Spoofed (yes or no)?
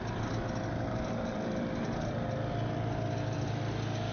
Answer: no